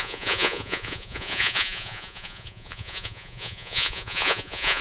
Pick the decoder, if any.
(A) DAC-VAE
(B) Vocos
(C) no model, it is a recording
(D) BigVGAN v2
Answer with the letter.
B